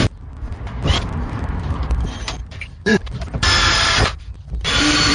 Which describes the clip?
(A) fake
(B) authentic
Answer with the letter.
A